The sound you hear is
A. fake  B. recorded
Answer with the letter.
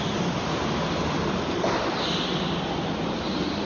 B